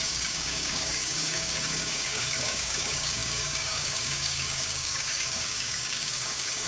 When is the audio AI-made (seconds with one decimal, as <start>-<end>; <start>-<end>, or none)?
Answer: 0.0-6.7